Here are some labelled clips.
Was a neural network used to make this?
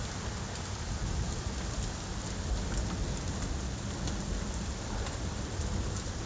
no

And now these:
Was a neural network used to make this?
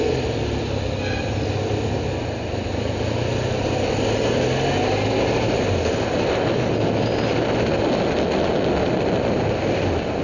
no